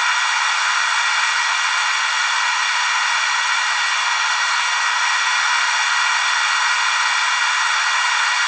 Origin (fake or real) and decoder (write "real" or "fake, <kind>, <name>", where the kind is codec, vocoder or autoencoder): real